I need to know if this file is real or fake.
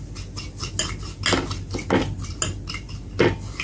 real